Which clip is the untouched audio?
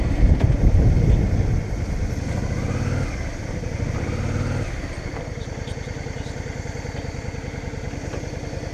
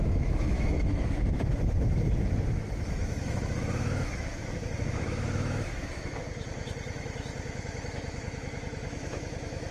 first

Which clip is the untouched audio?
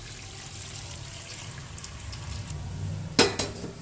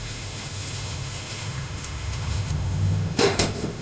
first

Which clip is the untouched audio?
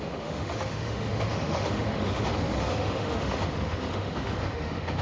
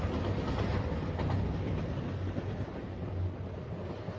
second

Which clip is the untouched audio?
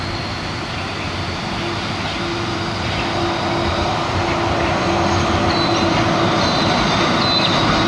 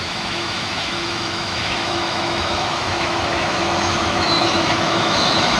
first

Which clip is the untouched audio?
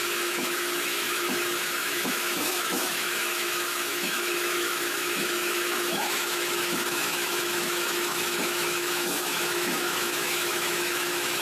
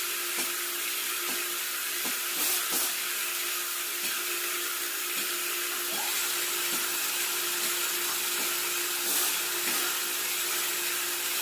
second